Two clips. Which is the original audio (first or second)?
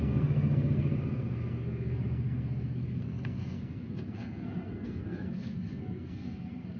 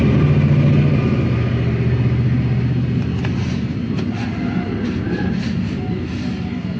second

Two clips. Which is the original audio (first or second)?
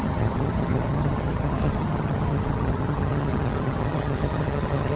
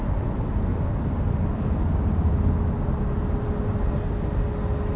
second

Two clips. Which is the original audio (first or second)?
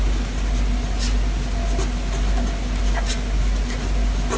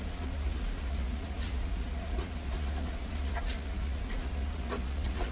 first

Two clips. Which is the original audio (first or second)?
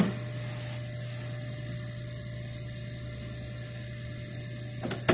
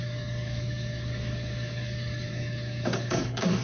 first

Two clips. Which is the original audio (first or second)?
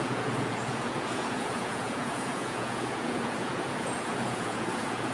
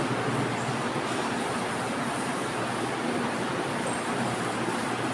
second